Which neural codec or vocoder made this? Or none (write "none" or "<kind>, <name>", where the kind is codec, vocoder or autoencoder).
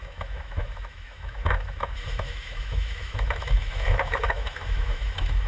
autoencoder, DAC-VAE